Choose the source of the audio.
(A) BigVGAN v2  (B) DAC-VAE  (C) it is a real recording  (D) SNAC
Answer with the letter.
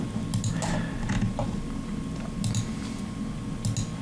C